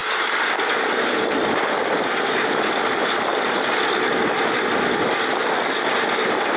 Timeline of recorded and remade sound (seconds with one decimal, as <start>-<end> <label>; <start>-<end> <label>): 0.0-3.7 remade; 3.7-6.6 recorded